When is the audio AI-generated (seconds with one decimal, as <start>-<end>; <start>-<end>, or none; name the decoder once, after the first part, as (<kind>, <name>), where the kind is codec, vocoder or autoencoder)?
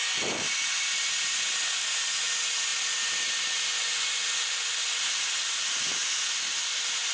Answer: none